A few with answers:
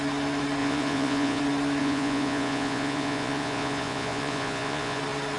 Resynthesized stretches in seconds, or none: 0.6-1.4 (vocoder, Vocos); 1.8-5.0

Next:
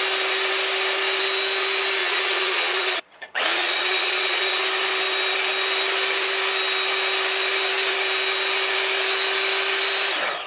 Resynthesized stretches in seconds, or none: 2.0-4.6 (vocoder, Vocos)

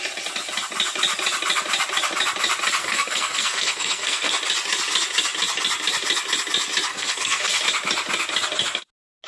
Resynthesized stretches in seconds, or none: 2.8-4.3 (codec, SNAC); 6.9-7.6